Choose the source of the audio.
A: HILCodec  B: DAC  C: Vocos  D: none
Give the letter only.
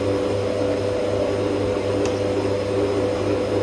D